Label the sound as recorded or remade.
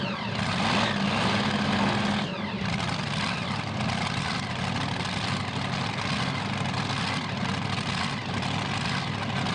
recorded